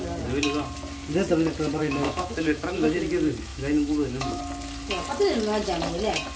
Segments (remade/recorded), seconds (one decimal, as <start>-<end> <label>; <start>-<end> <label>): 0.0-1.8 recorded; 1.8-3.0 remade; 3.0-3.5 recorded; 3.5-4.4 remade; 4.4-6.4 recorded